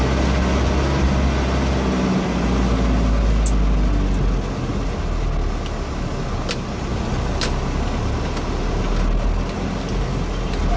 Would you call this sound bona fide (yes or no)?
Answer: yes